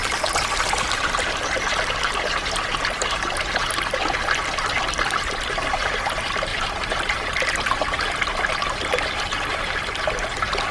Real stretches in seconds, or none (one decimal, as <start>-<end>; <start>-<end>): 0.0-10.7